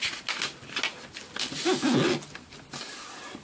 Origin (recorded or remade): recorded